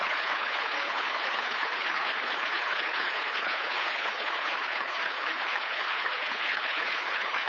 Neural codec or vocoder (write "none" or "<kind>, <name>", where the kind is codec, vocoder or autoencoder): codec, HILCodec